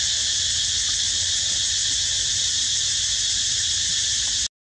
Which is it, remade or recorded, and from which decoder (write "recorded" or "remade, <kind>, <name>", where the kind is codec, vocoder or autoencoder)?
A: recorded